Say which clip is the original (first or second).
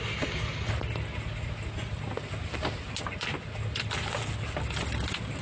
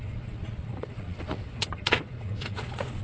first